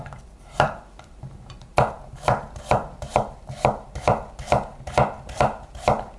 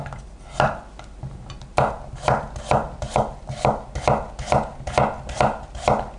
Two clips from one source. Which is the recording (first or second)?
second